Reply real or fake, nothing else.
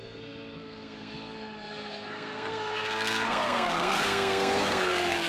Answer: fake